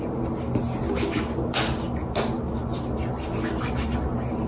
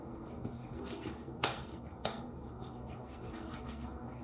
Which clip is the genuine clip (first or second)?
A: first